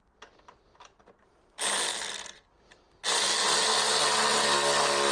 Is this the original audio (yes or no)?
yes